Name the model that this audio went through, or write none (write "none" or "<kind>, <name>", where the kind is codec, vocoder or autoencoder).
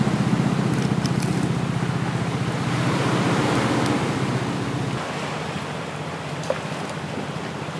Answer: none